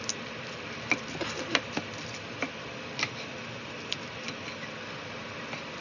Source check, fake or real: real